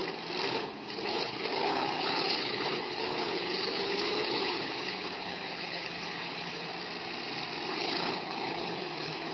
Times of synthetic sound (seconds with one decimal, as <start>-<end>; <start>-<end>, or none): 0.5-6.7; 7.7-9.3